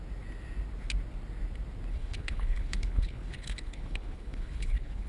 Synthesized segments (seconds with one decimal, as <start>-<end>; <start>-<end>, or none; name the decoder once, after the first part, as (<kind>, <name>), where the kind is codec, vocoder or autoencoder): 1.9-5.1 (codec, HILCodec)